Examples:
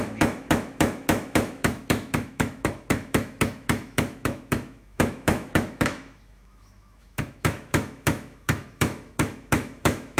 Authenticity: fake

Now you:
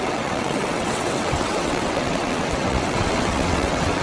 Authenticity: fake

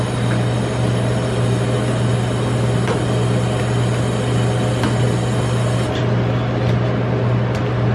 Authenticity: real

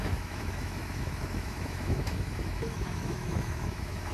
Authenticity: fake